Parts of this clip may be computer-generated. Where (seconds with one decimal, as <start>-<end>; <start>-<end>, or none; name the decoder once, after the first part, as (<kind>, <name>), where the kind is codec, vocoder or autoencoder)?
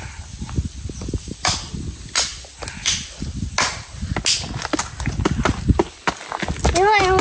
none